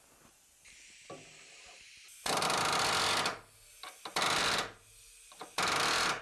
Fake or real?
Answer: real